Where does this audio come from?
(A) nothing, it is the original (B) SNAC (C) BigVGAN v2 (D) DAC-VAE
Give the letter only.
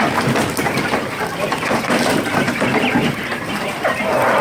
A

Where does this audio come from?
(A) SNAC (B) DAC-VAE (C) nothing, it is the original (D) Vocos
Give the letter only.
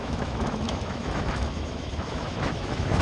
B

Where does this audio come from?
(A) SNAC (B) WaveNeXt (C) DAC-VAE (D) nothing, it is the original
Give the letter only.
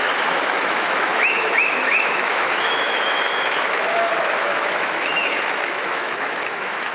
C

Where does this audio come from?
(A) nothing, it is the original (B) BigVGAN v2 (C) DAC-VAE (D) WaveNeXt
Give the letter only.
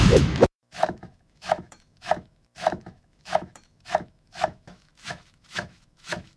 C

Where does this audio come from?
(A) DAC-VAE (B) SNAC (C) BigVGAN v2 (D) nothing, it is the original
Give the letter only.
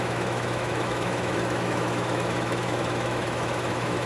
A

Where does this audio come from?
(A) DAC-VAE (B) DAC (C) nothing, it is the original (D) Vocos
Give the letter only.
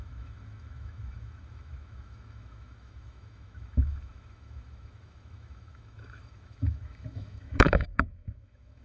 A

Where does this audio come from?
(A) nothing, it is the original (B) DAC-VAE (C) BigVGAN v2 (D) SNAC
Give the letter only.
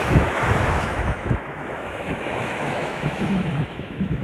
B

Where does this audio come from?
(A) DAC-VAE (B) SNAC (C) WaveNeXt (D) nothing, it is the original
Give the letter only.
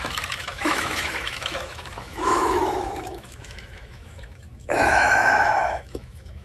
A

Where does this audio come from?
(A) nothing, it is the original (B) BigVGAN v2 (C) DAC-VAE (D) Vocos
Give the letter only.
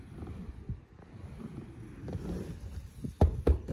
A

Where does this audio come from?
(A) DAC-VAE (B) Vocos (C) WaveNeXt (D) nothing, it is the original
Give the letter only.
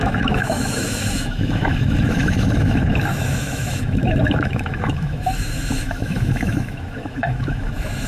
A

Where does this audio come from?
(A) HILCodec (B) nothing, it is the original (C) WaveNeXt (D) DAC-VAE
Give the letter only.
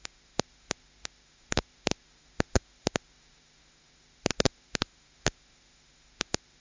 D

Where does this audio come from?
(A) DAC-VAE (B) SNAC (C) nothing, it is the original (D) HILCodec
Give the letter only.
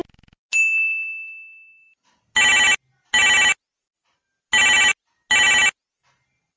C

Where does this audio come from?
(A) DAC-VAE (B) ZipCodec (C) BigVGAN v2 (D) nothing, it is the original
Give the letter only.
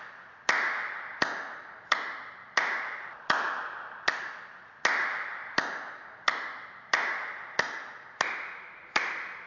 D